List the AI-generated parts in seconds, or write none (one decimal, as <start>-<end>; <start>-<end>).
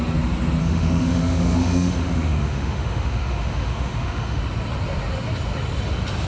0.6-4.4